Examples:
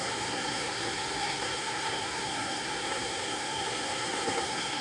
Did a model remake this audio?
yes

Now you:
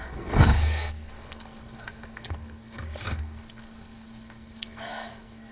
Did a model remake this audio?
yes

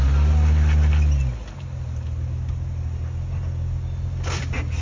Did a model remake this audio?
no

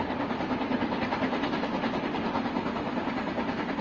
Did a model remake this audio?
no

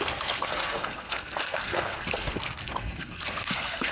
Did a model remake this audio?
yes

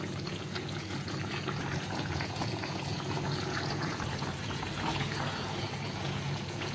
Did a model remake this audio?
yes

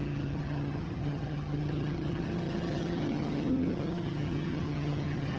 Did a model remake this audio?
yes